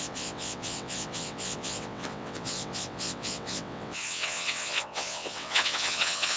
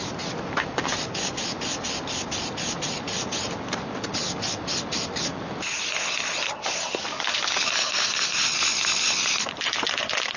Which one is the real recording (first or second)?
second